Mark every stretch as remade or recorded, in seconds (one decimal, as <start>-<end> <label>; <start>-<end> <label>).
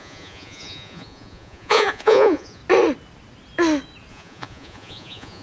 0.0-2.6 remade; 2.6-4.1 recorded; 4.1-5.4 remade